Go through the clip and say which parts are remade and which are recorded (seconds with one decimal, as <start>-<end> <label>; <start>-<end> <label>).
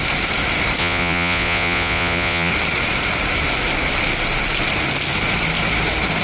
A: 0.0-0.8 recorded; 0.8-2.5 remade; 2.5-6.2 recorded